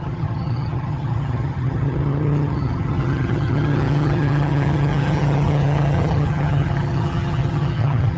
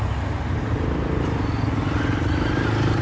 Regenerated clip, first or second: first